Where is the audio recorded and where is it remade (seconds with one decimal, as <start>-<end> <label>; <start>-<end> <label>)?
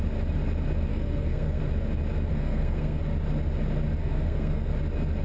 0.0-0.9 recorded; 0.9-1.6 remade; 1.6-2.3 recorded; 2.3-3.0 remade; 3.0-4.0 recorded; 4.0-4.7 remade; 4.7-5.2 recorded